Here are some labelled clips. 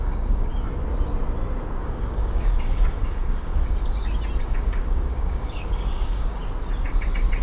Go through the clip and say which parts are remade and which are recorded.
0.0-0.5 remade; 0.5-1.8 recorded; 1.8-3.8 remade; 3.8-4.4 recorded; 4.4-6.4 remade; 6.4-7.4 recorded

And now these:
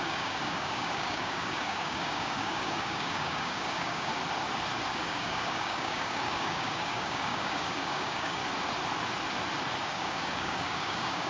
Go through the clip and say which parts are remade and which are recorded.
0.0-4.1 remade; 4.1-4.9 recorded; 4.9-8.4 remade; 8.4-9.8 recorded; 9.8-11.3 remade

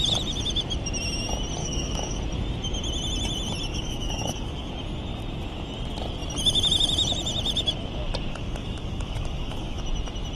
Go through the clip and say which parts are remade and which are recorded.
0.0-1.6 recorded; 1.6-2.2 remade; 2.2-3.7 recorded; 3.7-4.7 remade; 4.7-8.3 recorded; 8.3-9.8 remade; 9.8-10.4 recorded

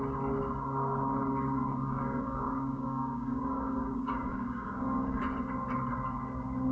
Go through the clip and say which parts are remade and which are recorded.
0.0-1.2 recorded; 1.2-5.2 remade; 5.2-6.7 recorded

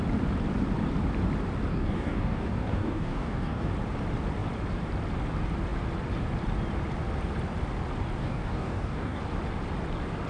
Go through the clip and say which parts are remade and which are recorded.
0.0-1.7 recorded; 1.7-3.7 remade; 3.7-8.2 recorded; 8.2-9.2 remade; 9.2-10.3 recorded